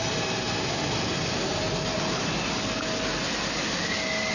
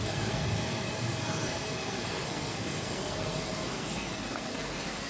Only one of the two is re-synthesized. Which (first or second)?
second